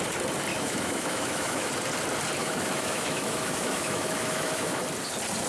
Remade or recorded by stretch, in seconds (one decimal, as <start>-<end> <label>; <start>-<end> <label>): 0.0-0.5 recorded; 0.5-1.7 remade; 1.7-2.4 recorded; 2.4-4.8 remade; 4.8-5.5 recorded